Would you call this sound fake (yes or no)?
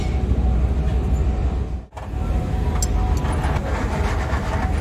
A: no